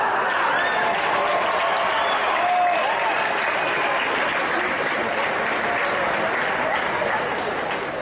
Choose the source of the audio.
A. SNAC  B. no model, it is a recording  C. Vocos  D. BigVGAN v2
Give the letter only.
B